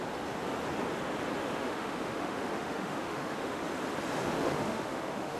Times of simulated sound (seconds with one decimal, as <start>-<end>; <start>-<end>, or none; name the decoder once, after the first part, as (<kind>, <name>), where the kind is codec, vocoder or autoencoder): 1.4-3.6 (autoencoder, DAC-VAE); 4.2-5.4